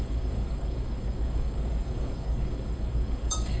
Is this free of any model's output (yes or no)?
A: no